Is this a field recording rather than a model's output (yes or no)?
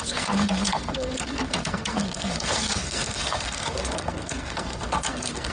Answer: no